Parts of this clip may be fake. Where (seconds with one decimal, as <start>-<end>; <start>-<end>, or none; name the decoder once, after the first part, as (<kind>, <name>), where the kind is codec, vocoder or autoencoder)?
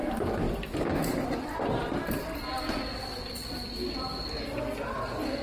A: 0.0-3.2 (vocoder, BigVGAN v2)